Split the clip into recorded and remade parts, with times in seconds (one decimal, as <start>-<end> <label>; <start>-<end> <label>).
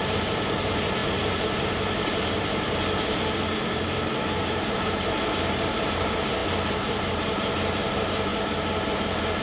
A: 0.0-8.3 remade; 8.3-8.9 recorded; 8.9-9.4 remade